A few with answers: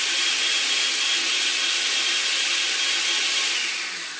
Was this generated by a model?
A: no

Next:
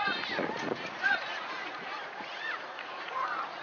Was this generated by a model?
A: yes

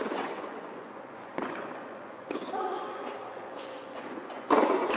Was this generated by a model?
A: yes